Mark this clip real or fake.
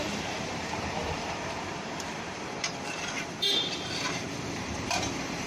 fake